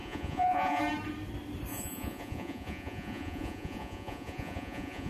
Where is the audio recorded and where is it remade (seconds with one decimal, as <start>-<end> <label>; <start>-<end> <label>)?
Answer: 0.0-0.8 remade; 0.8-1.7 recorded; 1.7-5.1 remade

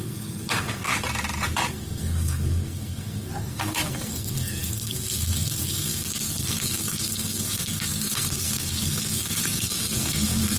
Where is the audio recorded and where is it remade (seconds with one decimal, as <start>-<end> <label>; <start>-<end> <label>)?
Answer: 0.0-0.9 remade; 0.9-1.7 recorded; 1.7-10.6 remade

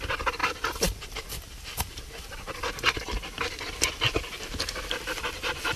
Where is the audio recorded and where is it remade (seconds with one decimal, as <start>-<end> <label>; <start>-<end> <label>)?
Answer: 0.0-5.8 recorded

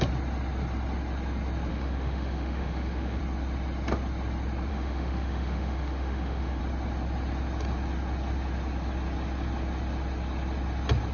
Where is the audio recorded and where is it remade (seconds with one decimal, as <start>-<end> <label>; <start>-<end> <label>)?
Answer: 0.0-1.7 recorded; 1.7-3.2 remade; 3.2-4.7 recorded; 4.7-6.6 remade; 6.6-11.1 recorded

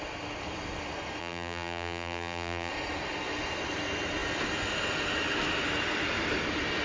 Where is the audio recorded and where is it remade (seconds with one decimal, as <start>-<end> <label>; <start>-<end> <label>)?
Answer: 0.0-1.2 recorded; 1.2-2.7 remade; 2.7-6.8 recorded